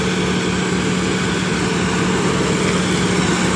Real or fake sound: real